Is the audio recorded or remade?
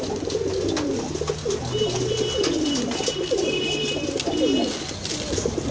recorded